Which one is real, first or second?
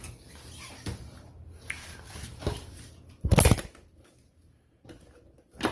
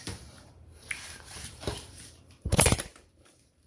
first